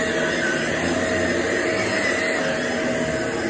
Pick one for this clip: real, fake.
real